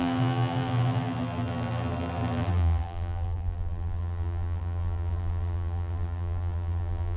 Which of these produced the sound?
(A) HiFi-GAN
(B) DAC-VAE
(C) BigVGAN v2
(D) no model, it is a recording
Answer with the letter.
C